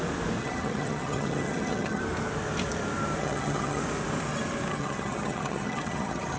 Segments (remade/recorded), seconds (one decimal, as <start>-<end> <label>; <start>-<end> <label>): 0.0-0.4 recorded; 0.4-2.0 remade; 2.0-3.2 recorded; 3.2-3.8 remade; 3.8-4.7 recorded; 4.7-6.4 remade